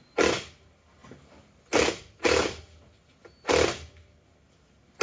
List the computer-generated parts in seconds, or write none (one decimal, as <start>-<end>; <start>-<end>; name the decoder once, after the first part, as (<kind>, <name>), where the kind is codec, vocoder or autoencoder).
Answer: none